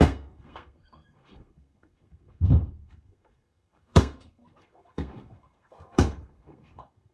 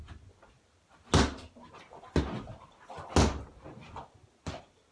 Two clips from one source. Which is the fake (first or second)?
first